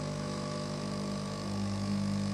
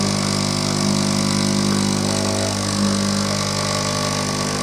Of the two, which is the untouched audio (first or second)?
second